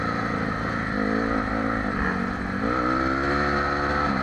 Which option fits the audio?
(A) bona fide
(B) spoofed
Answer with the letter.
A